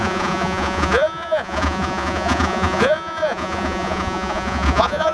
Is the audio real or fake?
fake